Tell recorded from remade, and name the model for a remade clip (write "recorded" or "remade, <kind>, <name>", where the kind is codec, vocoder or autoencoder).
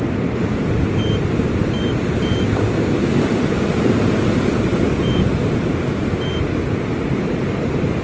recorded